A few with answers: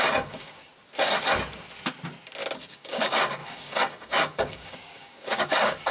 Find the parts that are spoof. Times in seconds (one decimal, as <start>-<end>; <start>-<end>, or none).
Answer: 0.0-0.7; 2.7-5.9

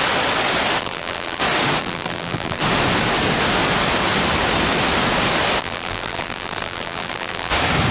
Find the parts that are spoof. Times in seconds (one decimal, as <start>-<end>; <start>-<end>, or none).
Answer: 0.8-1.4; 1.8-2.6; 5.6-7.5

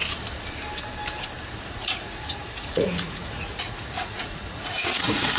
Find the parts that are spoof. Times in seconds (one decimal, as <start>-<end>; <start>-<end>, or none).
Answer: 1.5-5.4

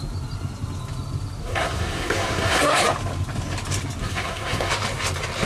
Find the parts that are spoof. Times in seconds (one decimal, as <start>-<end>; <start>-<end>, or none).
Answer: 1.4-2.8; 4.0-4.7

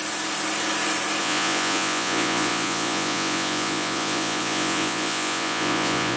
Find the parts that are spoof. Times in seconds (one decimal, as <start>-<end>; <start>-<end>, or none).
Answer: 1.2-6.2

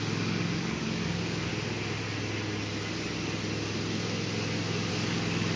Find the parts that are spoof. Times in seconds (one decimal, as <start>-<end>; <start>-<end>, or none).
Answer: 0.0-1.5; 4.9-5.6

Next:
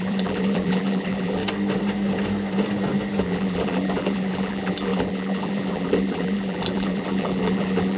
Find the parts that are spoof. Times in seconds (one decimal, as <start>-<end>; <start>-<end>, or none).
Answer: 0.0-1.4; 3.2-8.0

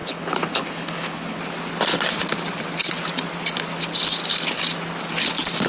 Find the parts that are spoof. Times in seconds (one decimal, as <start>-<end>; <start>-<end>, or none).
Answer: 0.0-1.4